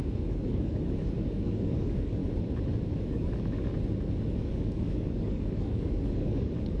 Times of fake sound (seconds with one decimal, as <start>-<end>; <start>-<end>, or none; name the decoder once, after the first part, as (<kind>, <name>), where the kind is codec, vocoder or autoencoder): 0.0-2.2 (codec, DAC); 3.0-3.7; 4.3-6.8